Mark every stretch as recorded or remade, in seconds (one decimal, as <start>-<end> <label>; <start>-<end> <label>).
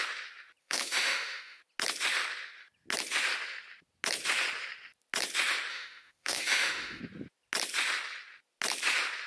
0.0-0.6 recorded; 0.6-1.6 remade; 1.6-5.7 recorded; 5.7-7.0 remade; 7.0-9.3 recorded